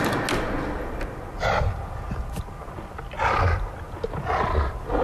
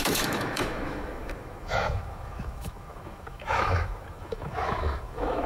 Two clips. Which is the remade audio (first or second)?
second